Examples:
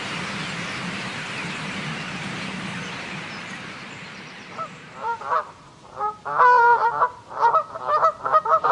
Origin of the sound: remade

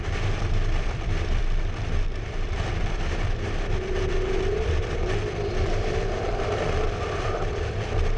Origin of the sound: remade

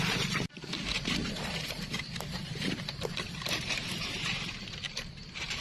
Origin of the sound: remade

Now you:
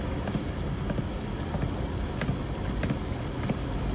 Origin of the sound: recorded